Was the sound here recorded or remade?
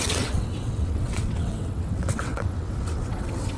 remade